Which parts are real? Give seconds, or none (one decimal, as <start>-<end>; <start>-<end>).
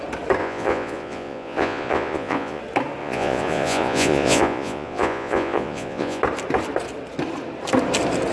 0.0-0.4; 2.6-3.0; 6.2-8.3